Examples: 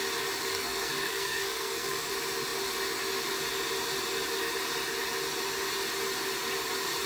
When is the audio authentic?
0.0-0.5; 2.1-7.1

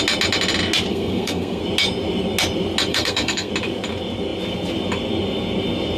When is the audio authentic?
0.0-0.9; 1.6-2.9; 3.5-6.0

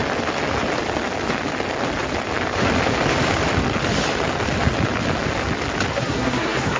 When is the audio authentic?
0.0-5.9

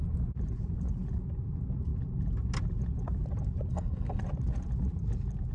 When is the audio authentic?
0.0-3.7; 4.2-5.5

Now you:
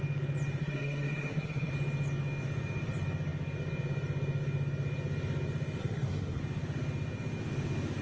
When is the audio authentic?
0.0-0.6; 1.7-5.8; 6.4-8.0